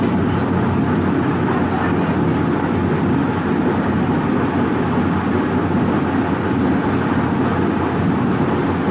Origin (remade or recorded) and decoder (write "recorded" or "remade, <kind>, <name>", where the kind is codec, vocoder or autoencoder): recorded